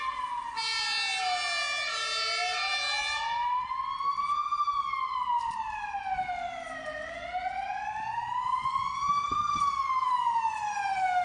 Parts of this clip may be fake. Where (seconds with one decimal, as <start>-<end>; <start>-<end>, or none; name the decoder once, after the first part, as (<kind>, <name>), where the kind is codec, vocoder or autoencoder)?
9.1-10.2 (codec, DAC)